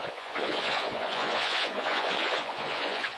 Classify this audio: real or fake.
fake